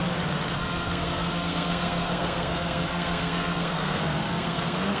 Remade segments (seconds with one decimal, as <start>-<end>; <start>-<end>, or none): 0.5-5.0